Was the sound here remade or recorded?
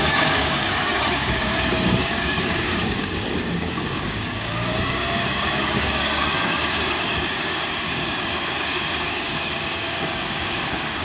remade